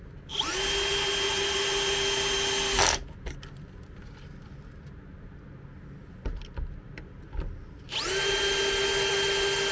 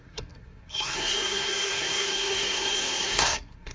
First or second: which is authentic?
first